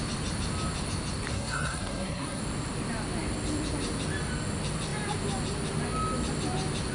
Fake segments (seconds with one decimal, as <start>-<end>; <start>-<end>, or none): 1.3-2.4